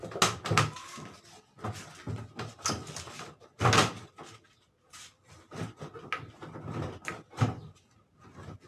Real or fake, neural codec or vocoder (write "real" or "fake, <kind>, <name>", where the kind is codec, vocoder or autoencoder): real